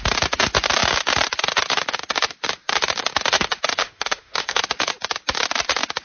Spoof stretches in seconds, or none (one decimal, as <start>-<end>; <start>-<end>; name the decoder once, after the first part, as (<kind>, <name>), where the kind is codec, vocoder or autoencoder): 3.8-4.6 (autoencoder, DAC-VAE)